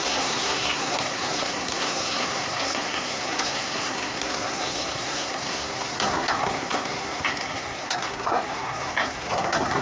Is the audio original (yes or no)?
no